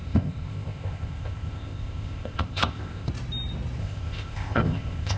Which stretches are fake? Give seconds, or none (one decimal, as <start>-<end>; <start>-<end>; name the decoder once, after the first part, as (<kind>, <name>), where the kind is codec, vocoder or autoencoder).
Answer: 0.0-3.1 (codec, ZipCodec); 3.8-5.2